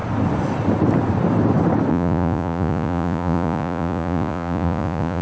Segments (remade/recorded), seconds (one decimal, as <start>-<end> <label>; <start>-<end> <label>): 0.0-1.9 recorded; 1.9-5.2 remade